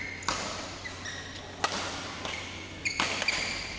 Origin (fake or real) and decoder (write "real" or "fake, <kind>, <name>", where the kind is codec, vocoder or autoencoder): real